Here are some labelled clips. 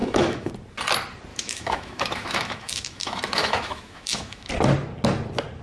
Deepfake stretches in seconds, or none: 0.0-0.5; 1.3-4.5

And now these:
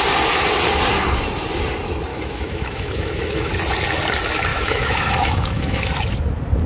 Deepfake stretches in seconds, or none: 2.1-3.5; 4.5-5.9

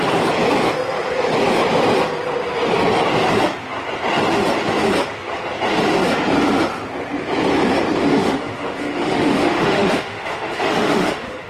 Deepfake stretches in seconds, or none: 8.0-11.5

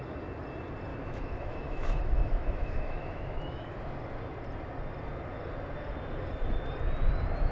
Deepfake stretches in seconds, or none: 0.9-3.8

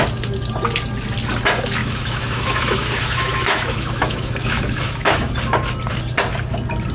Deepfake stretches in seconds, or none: 1.8-5.3

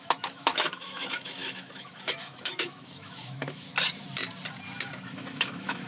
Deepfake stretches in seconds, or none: 0.0-3.7; 5.1-5.9